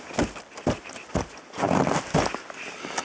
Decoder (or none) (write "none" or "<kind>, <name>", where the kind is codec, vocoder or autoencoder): none